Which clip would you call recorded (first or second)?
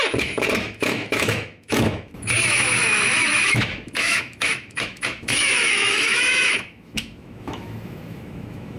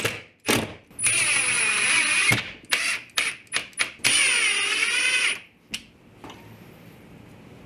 second